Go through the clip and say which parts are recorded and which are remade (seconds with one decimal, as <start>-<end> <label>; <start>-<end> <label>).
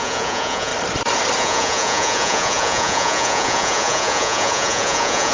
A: 0.0-0.7 remade; 0.7-1.4 recorded; 1.4-5.3 remade